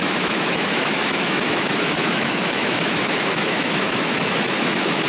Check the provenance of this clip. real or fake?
fake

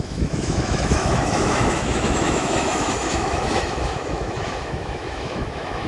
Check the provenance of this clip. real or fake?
fake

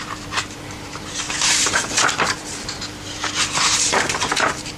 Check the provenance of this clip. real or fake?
fake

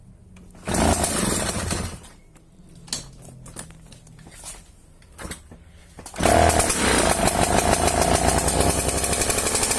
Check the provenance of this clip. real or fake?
real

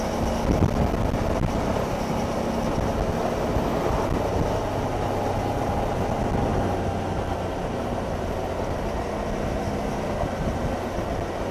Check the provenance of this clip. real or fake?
real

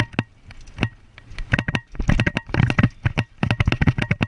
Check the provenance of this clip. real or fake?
real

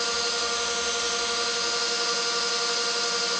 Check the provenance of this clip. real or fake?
real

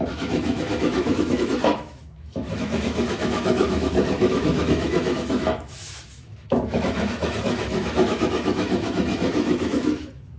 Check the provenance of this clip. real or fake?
fake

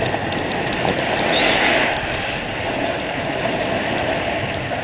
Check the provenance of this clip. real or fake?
real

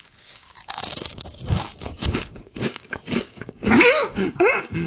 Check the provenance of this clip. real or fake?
fake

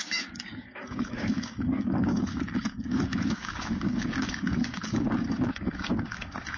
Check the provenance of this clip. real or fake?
fake